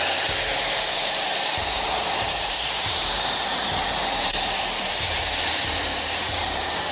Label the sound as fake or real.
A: fake